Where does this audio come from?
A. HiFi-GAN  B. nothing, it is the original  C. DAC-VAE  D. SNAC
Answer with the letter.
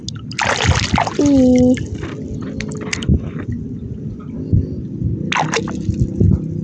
B